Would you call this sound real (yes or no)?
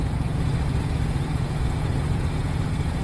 no